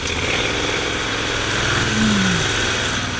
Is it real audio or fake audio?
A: real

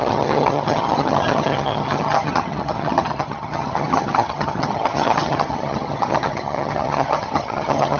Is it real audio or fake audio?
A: fake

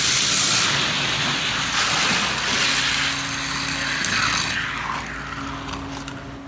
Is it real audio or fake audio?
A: real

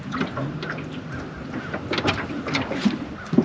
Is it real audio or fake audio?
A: real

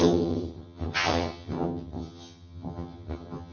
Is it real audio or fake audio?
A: fake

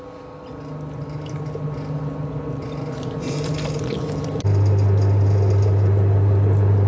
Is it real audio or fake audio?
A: real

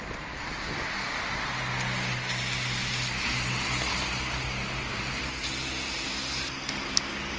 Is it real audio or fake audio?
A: real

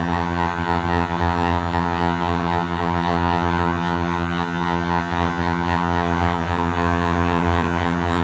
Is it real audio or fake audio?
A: fake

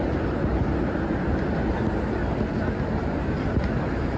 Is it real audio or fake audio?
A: real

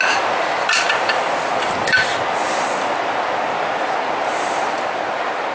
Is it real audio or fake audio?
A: real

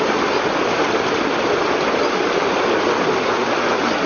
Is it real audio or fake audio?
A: real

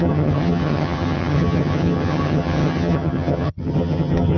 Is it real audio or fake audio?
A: fake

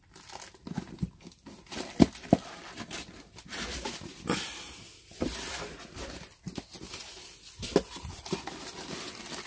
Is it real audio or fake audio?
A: real